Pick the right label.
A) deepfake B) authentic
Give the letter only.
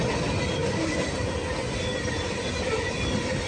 B